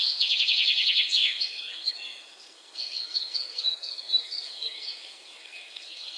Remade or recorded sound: remade